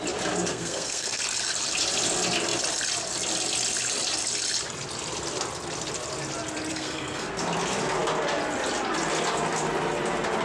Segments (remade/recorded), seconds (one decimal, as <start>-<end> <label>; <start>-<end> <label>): 0.0-0.5 recorded; 0.5-1.2 remade; 1.2-6.7 recorded; 6.7-7.3 remade; 7.3-10.4 recorded